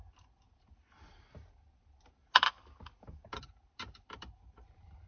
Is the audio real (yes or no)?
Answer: yes